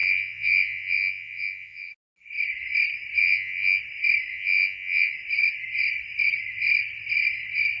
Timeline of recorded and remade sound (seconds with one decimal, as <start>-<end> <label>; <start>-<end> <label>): 0.0-1.9 remade; 1.9-3.2 recorded; 3.2-3.8 remade; 3.8-4.3 recorded; 4.3-5.1 remade; 5.1-7.8 recorded